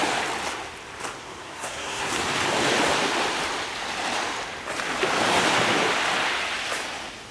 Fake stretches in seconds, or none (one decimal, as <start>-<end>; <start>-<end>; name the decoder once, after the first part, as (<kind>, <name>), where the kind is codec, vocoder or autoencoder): 1.4-2.1 (codec, SNAC)